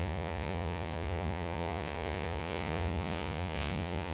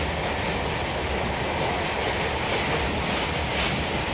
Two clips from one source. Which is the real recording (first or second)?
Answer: second